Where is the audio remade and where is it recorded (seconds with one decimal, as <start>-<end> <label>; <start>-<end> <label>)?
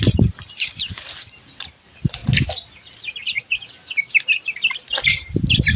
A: 0.0-5.8 recorded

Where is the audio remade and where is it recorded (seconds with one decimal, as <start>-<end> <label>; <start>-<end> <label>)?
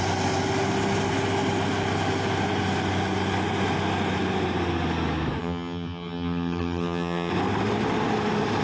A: 0.0-5.4 recorded; 5.4-7.3 remade; 7.3-8.6 recorded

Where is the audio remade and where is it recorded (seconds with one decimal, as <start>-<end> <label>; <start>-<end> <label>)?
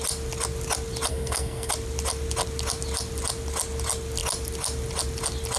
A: 0.0-1.1 recorded; 1.1-1.7 remade; 1.7-5.6 recorded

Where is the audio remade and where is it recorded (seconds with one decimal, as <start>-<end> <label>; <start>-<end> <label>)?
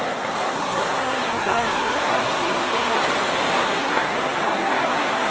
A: 0.0-3.0 remade; 3.0-3.5 recorded; 3.5-5.3 remade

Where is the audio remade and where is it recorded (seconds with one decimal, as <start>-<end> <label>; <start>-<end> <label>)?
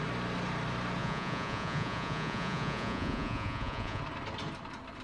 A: 0.0-1.0 recorded; 1.0-4.0 remade; 4.0-5.0 recorded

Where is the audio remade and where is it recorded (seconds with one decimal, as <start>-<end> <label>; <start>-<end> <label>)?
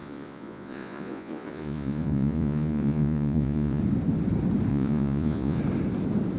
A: 0.0-3.8 remade; 3.8-4.7 recorded; 4.7-5.6 remade; 5.6-6.4 recorded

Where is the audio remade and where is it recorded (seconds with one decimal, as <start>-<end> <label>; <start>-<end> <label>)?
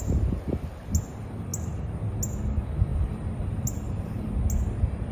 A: 0.0-2.9 recorded; 2.9-4.4 remade; 4.4-5.1 recorded